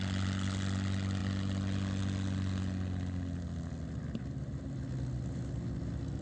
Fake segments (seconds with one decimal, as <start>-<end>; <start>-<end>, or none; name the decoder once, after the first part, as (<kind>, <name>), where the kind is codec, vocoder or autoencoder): none